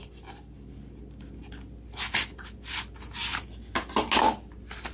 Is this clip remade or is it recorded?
recorded